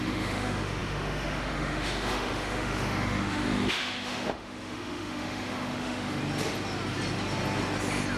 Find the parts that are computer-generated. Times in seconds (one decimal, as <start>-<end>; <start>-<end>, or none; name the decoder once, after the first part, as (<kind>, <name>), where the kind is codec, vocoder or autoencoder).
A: 0.0-6.2 (autoencoder, DAC-VAE)